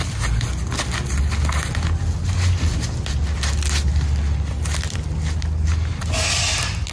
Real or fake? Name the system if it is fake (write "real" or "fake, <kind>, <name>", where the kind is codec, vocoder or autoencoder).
real